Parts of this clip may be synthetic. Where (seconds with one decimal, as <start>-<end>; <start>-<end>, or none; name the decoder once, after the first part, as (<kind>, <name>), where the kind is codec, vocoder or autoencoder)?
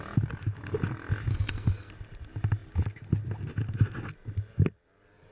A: 1.3-1.9 (codec, SNAC)